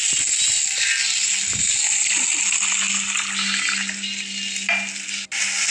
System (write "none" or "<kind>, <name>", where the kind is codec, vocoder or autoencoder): none